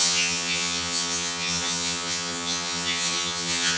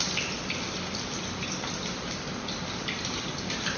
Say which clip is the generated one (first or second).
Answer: first